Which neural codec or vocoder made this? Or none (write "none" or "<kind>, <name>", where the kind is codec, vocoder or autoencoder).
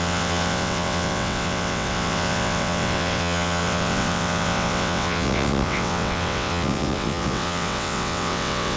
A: vocoder, WaveNeXt